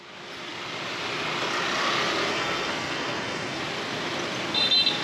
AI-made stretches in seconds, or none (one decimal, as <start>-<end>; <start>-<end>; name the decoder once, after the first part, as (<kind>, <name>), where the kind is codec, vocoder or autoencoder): 2.3-3.6 (codec, SNAC)